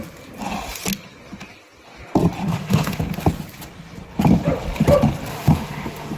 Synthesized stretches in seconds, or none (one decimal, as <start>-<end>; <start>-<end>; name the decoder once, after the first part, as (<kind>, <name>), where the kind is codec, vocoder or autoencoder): 2.4-3.0 (autoencoder, DAC-VAE); 5.3-6.2